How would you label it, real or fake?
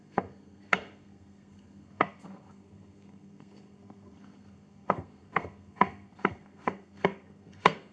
fake